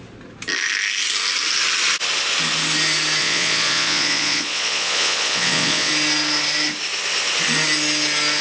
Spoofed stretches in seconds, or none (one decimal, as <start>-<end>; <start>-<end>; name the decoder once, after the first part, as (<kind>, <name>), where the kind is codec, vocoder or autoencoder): 3.2-5.9 (vocoder, Vocos)